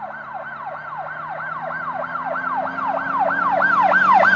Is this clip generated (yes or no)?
no